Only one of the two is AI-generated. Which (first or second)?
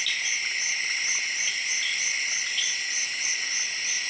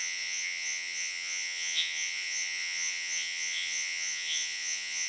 second